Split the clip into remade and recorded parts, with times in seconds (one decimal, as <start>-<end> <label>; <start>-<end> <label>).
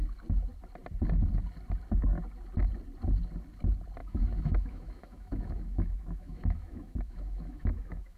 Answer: 0.0-4.0 recorded; 4.0-8.2 remade